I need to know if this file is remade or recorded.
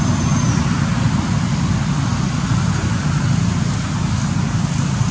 recorded